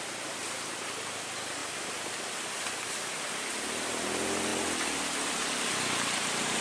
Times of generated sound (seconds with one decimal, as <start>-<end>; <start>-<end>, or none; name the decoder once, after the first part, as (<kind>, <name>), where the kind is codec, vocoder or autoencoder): none